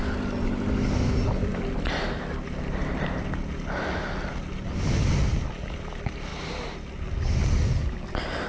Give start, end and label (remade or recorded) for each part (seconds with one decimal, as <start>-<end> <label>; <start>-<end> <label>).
0.0-8.5 recorded